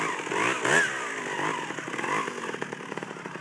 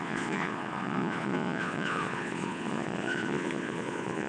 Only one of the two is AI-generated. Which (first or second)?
second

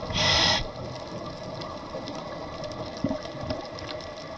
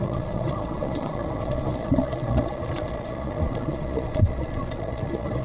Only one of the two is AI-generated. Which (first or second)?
second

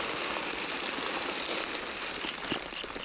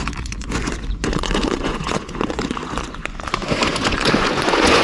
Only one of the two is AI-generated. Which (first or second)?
second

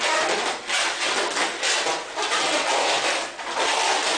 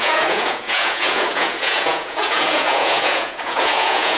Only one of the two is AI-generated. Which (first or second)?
second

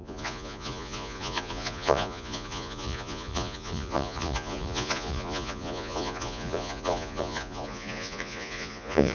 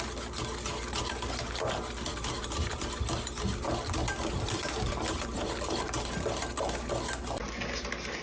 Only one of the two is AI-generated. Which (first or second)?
first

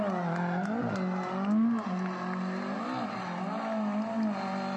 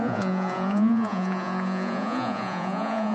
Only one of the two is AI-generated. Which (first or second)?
second